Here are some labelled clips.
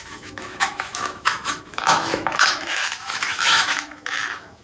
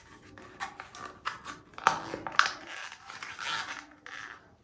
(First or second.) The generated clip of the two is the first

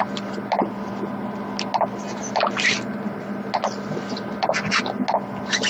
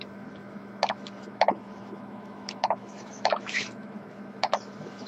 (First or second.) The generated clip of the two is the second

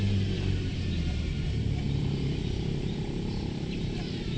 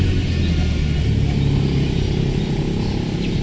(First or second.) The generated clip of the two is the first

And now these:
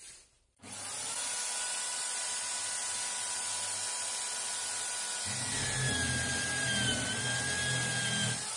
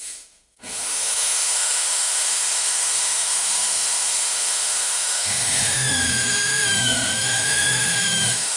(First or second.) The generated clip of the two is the second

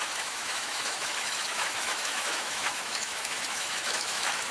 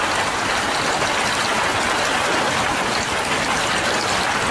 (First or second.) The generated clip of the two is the first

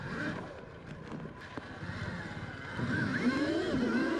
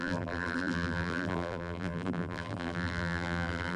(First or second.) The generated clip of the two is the second